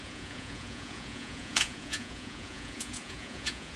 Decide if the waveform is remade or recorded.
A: remade